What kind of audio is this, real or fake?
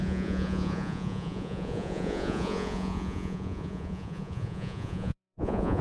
fake